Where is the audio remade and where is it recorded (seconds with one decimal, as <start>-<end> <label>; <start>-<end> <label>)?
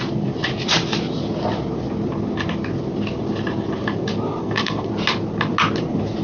0.0-4.4 recorded; 4.4-4.9 remade; 4.9-6.2 recorded